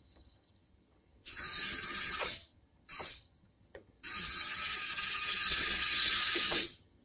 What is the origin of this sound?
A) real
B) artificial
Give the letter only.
B